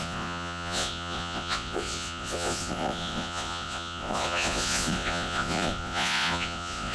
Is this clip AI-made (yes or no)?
yes